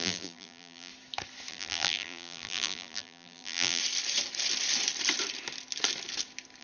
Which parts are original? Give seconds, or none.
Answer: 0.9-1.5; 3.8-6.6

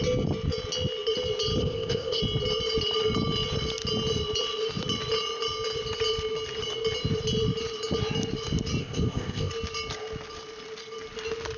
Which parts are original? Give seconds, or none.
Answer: 0.0-1.6; 2.2-8.8; 9.5-11.6

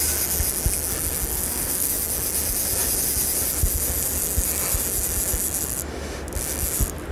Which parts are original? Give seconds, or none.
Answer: 0.0-1.3; 1.9-7.1

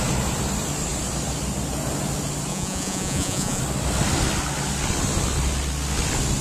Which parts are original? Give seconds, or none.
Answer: 0.0-2.5; 3.6-6.4

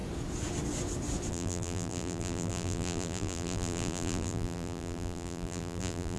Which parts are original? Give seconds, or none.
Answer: 0.0-1.3

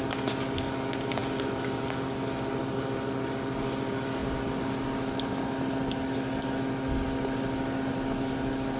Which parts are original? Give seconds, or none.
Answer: 0.0-8.8